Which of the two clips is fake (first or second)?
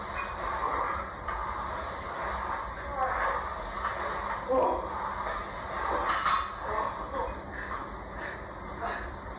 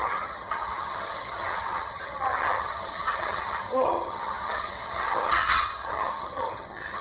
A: second